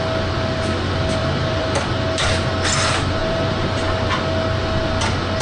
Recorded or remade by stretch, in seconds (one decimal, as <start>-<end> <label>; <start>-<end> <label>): 0.0-1.2 recorded; 1.2-1.8 remade; 1.8-3.2 recorded; 3.2-3.8 remade; 3.8-5.4 recorded